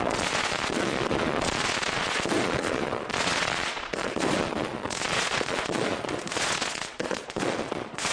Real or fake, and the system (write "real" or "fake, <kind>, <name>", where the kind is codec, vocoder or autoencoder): fake, vocoder, Vocos